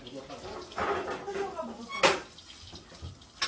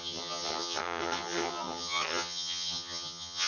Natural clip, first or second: first